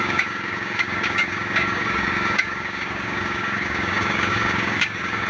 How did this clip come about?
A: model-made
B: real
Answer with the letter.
A